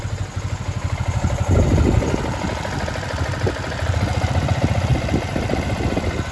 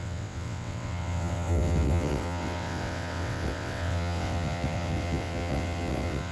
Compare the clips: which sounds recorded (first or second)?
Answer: first